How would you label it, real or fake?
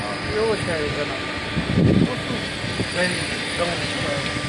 real